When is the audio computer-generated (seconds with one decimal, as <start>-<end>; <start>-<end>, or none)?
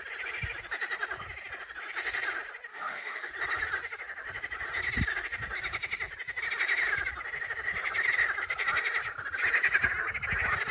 2.7-3.3